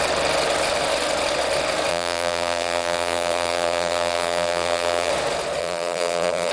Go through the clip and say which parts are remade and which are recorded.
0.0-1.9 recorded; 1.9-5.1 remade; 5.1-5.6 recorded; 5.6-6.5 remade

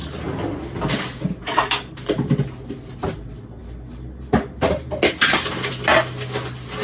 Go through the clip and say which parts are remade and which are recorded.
0.0-6.8 recorded

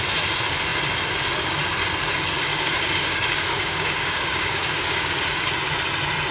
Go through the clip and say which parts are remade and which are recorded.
0.0-2.5 recorded; 2.5-5.5 remade; 5.5-6.3 recorded

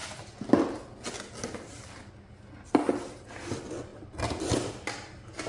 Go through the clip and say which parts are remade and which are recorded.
0.0-3.9 recorded; 3.9-4.7 remade; 4.7-5.5 recorded

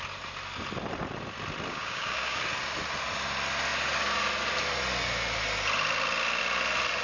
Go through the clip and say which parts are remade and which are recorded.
0.0-1.7 recorded; 1.7-2.4 remade; 2.4-7.0 recorded